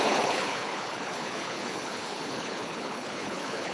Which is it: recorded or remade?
remade